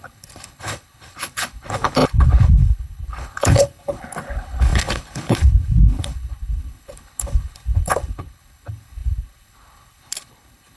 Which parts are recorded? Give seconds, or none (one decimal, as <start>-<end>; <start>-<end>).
none